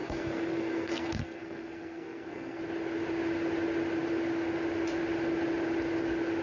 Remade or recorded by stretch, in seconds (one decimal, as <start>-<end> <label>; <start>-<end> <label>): 0.0-2.6 remade; 2.6-6.4 recorded